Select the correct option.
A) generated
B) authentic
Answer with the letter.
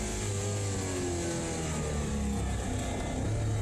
B